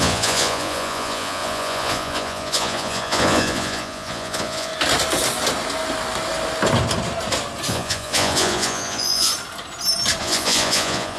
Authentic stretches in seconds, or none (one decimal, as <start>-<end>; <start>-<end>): 4.7-7.7; 9.3-10.2